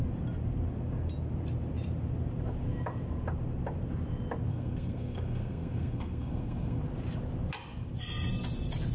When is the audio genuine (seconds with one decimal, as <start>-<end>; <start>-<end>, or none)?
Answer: 0.0-4.5; 6.8-8.9